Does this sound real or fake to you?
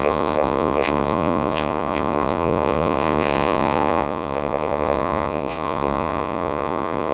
fake